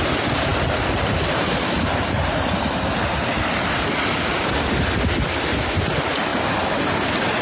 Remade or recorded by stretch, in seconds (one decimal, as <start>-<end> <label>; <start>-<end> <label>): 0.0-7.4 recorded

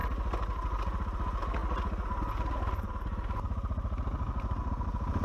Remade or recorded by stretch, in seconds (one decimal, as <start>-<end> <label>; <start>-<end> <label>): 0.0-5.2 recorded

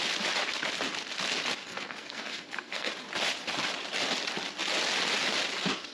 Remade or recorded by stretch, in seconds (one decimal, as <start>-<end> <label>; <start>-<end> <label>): 0.0-1.6 recorded; 1.6-2.9 remade; 2.9-5.9 recorded

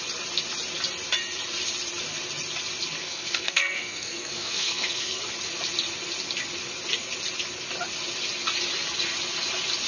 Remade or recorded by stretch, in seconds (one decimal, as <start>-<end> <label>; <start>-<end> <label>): 0.0-3.0 recorded; 3.0-5.2 remade; 5.2-9.9 recorded

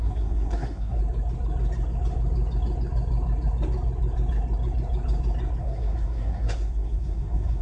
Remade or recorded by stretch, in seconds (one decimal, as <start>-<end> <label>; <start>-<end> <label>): 0.0-1.0 remade; 1.0-5.6 recorded; 5.6-7.6 remade